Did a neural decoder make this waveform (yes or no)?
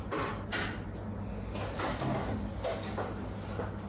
no